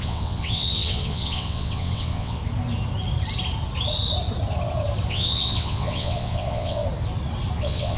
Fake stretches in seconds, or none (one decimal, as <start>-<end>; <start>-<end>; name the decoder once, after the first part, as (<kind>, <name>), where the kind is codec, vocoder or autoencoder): 0.0-2.4 (vocoder, WaveNeXt); 5.1-6.8; 7.6-8.0